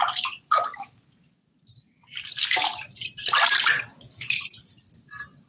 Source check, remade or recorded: recorded